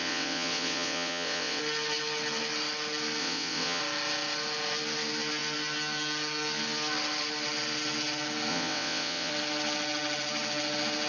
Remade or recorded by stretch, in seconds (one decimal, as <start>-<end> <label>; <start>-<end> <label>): 0.0-1.6 remade; 1.6-3.2 recorded; 3.2-3.8 remade; 3.8-8.5 recorded; 8.5-9.3 remade; 9.3-11.1 recorded

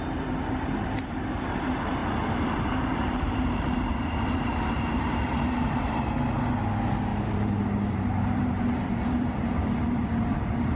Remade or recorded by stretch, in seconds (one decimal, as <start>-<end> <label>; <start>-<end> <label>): 0.0-2.0 recorded; 2.0-5.8 remade; 5.8-7.1 recorded; 7.1-10.8 remade

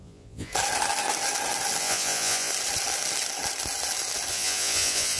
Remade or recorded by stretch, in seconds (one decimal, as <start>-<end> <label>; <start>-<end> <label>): 0.0-0.5 remade; 0.5-1.8 recorded; 1.8-2.5 remade; 2.5-4.3 recorded; 4.3-5.2 remade

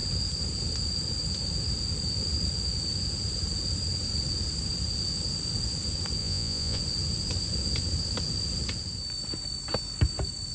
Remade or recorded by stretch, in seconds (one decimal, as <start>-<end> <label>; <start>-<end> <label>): 0.0-6.2 recorded; 6.2-6.8 remade; 6.8-10.5 recorded

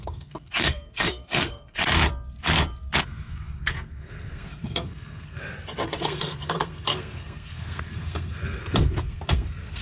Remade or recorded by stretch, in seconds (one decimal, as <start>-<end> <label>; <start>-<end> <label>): 0.0-1.8 remade; 1.8-3.0 recorded; 3.0-5.4 remade; 5.4-6.0 recorded; 6.0-9.8 remade

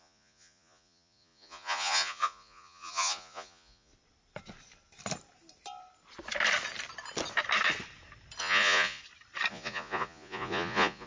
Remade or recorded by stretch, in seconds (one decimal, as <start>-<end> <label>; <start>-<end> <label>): 0.0-3.9 remade; 3.9-8.4 recorded; 8.4-9.0 remade; 9.0-9.5 recorded; 9.5-11.1 remade

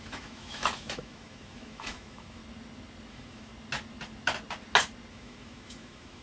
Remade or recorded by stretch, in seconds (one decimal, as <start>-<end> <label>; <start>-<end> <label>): 0.0-2.4 remade; 2.4-3.1 recorded; 3.1-3.5 remade; 3.5-5.1 recorded; 5.1-6.2 remade

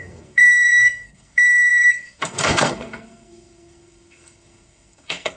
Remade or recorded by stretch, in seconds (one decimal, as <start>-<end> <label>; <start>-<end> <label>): 0.0-5.4 remade